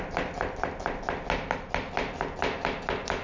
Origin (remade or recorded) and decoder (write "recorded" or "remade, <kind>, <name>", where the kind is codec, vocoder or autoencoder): recorded